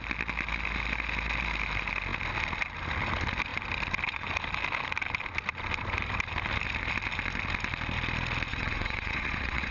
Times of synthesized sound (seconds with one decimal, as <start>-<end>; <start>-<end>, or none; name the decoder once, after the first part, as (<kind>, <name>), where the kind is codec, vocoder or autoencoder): 8.5-9.7 (vocoder, WaveNeXt)